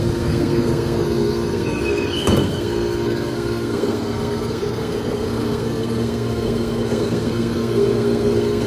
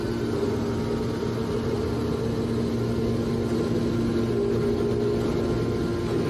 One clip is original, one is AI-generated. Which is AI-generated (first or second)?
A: first